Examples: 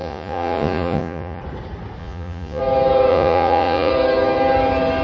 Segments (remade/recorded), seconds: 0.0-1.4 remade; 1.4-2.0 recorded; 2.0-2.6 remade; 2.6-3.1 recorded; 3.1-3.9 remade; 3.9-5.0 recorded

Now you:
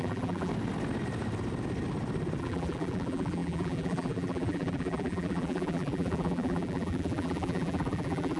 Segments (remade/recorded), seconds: 0.0-0.5 remade; 0.5-2.4 recorded; 2.4-8.4 remade

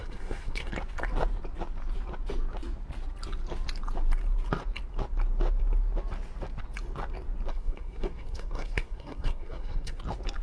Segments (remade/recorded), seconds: 0.0-0.7 remade; 0.7-7.5 recorded; 7.5-10.0 remade; 10.0-10.4 recorded

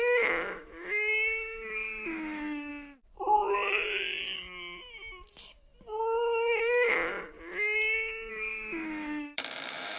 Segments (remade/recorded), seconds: 0.0-2.7 remade; 2.7-6.0 recorded; 6.0-7.1 remade; 7.1-8.3 recorded; 8.3-10.0 remade

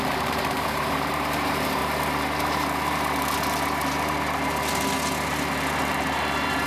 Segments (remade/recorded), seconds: 0.0-1.8 remade; 1.8-5.8 recorded; 5.8-6.7 remade

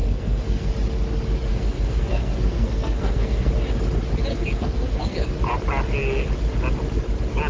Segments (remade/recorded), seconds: 0.0-0.7 remade; 0.7-1.5 recorded; 1.5-3.5 remade; 3.5-4.3 recorded; 4.3-5.3 remade; 5.3-7.5 recorded